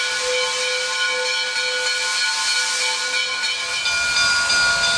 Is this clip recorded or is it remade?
recorded